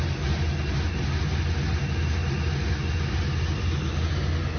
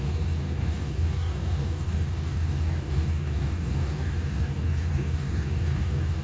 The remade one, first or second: second